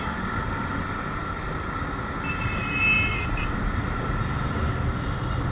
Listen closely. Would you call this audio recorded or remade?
recorded